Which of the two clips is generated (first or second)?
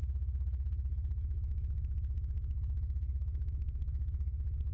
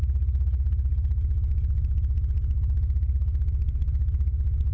first